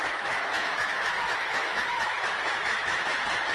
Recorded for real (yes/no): no